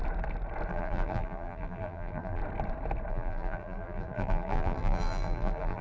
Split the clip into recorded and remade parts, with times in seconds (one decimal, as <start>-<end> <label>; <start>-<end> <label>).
0.0-0.7 recorded; 0.7-2.4 remade; 2.4-3.1 recorded; 3.1-5.8 remade